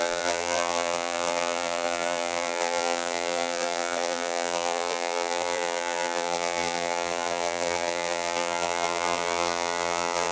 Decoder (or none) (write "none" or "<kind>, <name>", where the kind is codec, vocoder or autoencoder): vocoder, BigVGAN v2